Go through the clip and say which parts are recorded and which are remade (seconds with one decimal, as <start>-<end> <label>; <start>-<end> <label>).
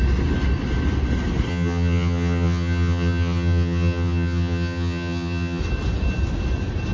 0.0-1.5 recorded; 1.5-5.6 remade; 5.6-6.9 recorded